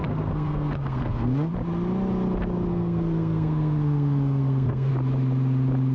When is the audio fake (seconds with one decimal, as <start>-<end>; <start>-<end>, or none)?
0.0-1.5; 2.7-4.9